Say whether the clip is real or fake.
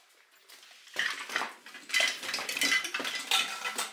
real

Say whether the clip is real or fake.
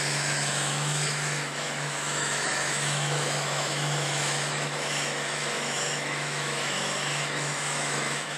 fake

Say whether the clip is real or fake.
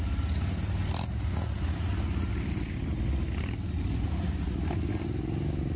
real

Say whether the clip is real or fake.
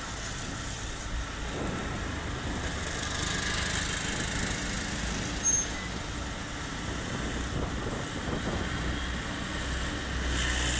real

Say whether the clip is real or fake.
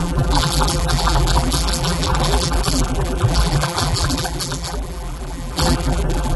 fake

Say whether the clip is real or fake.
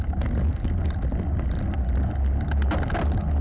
real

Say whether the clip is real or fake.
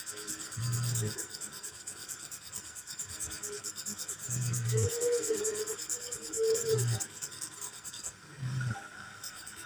fake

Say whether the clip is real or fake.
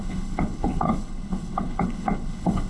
fake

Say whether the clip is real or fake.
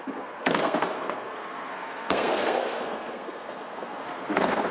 fake